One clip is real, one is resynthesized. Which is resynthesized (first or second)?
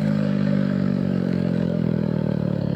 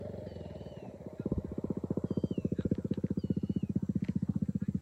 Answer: first